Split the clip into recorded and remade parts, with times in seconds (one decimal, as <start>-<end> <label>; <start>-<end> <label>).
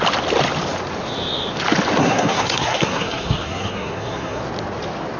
0.0-2.0 recorded; 2.0-4.4 remade; 4.4-5.2 recorded